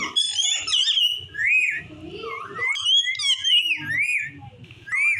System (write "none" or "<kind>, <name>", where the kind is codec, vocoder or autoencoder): none